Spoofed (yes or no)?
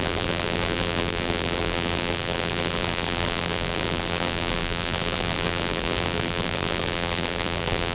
yes